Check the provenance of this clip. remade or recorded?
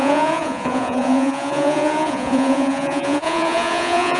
remade